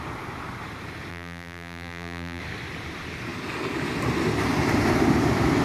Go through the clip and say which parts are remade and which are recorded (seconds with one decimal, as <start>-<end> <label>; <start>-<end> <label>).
0.0-1.1 recorded; 1.1-2.4 remade; 2.4-5.6 recorded

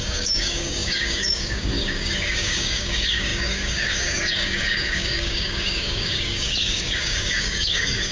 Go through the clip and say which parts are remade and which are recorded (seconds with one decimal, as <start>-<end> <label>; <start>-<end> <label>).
0.0-8.1 remade

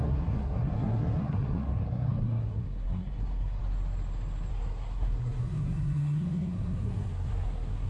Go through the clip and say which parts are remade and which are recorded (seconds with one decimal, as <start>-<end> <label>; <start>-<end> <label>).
0.0-3.6 remade; 3.6-4.5 recorded; 4.5-7.9 remade